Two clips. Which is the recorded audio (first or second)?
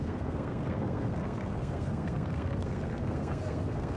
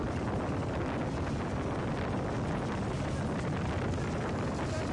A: second